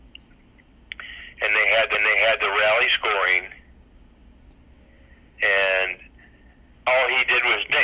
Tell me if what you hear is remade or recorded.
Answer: recorded